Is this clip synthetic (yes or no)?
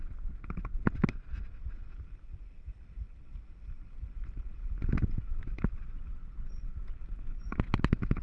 no